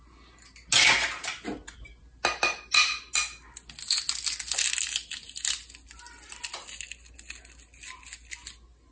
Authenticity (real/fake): real